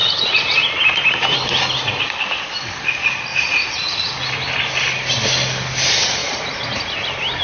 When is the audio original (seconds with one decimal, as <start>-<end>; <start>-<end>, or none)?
0.6-3.3; 4.1-6.2; 6.8-7.4